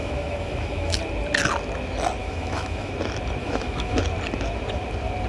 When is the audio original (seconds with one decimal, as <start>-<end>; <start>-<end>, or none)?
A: 1.0-2.2; 2.9-3.4; 4.0-5.3